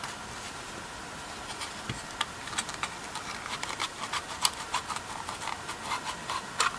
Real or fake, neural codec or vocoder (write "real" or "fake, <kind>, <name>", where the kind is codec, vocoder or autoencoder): real